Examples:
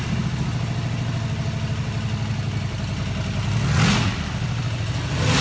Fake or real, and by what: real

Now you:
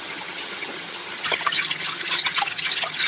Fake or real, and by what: fake, vocoder, HiFi-GAN